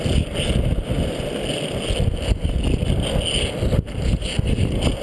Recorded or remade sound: recorded